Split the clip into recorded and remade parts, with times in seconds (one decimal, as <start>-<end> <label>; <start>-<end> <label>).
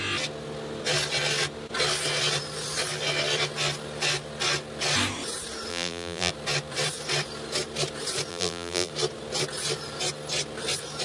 0.0-5.7 recorded; 5.7-6.3 remade; 6.3-8.3 recorded; 8.3-8.9 remade; 8.9-11.0 recorded